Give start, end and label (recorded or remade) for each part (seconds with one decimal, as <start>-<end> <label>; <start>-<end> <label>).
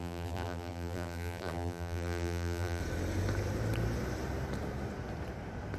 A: 0.0-2.8 remade; 2.8-5.8 recorded